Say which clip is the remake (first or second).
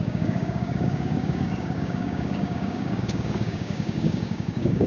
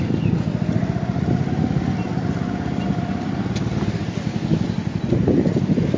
first